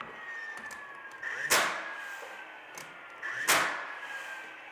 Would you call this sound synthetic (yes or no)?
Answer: no